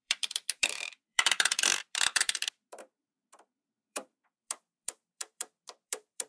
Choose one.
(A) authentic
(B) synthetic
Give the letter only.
B